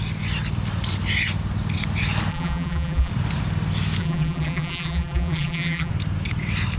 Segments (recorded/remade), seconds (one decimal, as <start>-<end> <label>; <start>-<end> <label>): 0.0-2.3 recorded; 2.3-3.1 remade; 3.1-4.0 recorded; 4.0-5.9 remade; 5.9-6.8 recorded

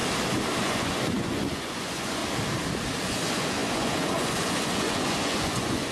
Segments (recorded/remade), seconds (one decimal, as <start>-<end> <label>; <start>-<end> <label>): 0.0-0.6 recorded; 0.6-2.2 remade; 2.2-3.0 recorded; 3.0-5.9 remade

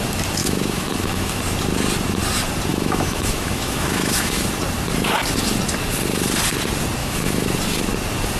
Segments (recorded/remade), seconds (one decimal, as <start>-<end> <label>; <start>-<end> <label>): 0.0-0.4 recorded; 0.4-1.4 remade; 1.4-2.7 recorded; 2.7-4.4 remade; 4.4-7.0 recorded; 7.0-7.5 remade; 7.5-8.4 recorded

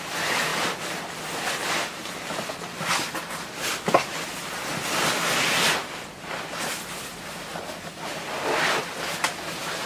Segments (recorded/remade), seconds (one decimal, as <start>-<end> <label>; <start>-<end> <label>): 0.0-5.8 recorded; 5.8-6.6 remade; 6.6-7.5 recorded; 7.5-8.3 remade; 8.3-9.9 recorded